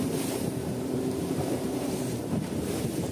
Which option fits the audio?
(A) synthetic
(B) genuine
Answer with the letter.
A